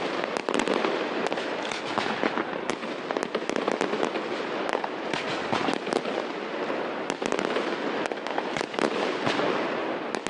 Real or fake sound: real